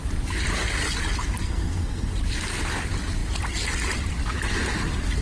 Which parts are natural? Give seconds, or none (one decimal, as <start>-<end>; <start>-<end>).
0.0-1.4; 2.1-5.2